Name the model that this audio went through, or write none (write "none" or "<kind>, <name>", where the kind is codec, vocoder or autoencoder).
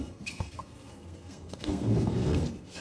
codec, SNAC